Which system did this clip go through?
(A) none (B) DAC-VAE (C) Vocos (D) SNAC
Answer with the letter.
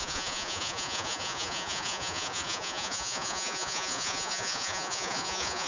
C